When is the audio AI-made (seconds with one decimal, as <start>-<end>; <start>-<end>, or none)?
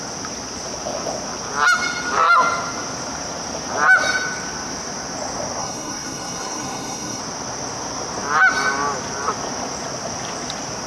5.6-7.2